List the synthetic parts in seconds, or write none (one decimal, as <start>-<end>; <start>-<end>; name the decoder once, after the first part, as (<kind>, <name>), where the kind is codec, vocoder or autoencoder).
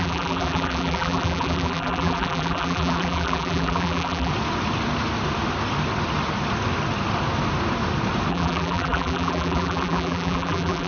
0.0-4.3 (vocoder, BigVGAN v2); 8.3-10.9